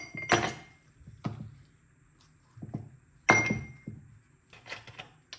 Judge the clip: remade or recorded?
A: recorded